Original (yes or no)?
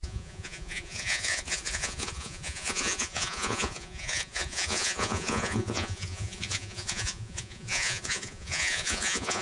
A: no